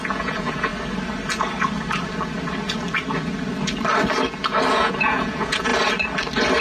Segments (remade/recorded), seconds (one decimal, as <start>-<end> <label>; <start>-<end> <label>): 0.0-0.7 remade; 0.7-4.7 recorded; 4.7-5.7 remade; 5.7-6.6 recorded